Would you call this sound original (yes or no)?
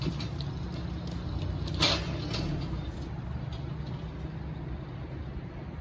yes